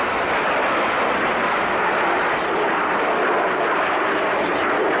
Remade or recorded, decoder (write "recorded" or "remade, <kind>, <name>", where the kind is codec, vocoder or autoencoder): recorded